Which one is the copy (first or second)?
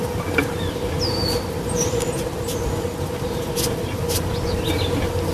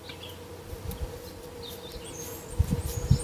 first